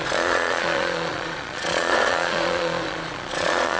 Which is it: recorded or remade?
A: remade